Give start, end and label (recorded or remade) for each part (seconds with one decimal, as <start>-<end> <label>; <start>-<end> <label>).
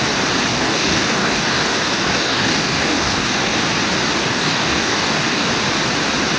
0.0-0.5 recorded; 0.5-3.6 remade; 3.6-4.2 recorded; 4.2-5.5 remade; 5.5-6.4 recorded